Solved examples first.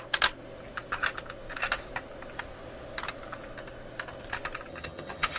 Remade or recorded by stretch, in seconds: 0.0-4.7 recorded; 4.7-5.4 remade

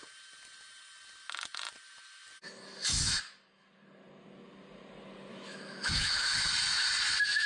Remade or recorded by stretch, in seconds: 0.0-5.3 recorded; 5.3-6.5 remade; 6.5-7.5 recorded

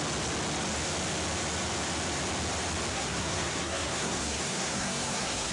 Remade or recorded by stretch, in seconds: 0.0-2.9 recorded; 2.9-5.5 remade

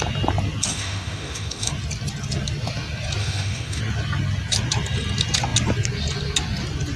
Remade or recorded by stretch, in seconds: 0.0-0.7 recorded; 0.7-1.7 remade; 1.7-3.2 recorded; 3.2-3.8 remade; 3.8-7.0 recorded

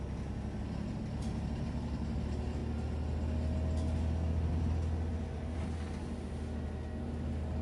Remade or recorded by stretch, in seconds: 0.0-7.6 recorded

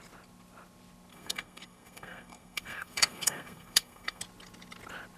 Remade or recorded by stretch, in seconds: 0.0-1.1 recorded; 1.1-4.2 remade; 4.2-5.2 recorded

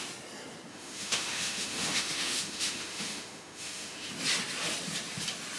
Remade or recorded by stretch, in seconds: 0.0-0.7 recorded; 0.7-4.1 remade; 4.1-5.6 recorded